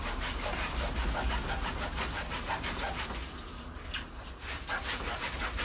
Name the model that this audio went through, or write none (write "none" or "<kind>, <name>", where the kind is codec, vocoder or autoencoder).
none